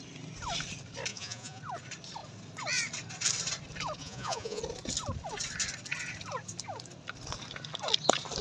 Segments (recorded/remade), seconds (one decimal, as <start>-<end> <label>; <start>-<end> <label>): 0.0-1.1 recorded; 1.1-1.6 remade; 1.6-4.0 recorded; 4.0-4.6 remade; 4.6-8.4 recorded